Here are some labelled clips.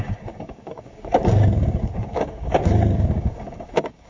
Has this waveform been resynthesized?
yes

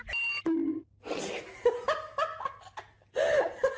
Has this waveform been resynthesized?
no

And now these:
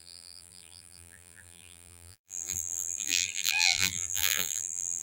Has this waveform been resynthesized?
yes